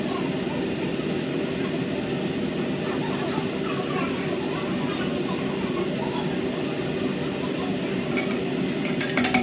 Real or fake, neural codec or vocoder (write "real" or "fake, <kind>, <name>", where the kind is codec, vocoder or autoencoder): real